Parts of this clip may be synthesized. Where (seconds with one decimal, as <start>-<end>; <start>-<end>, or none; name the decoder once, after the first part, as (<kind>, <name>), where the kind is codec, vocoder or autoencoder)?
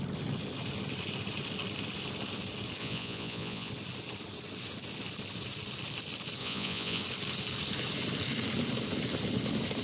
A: 2.8-3.7 (vocoder, Vocos); 6.4-7.0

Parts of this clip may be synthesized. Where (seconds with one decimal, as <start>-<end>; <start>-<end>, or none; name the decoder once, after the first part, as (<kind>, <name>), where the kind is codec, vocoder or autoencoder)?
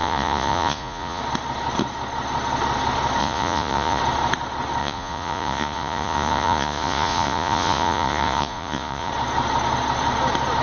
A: 0.0-1.2 (vocoder, Vocos); 3.2-4.0; 4.8-9.1